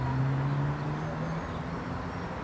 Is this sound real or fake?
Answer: real